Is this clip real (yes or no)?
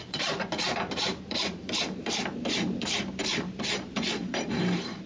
no